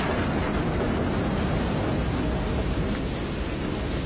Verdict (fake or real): real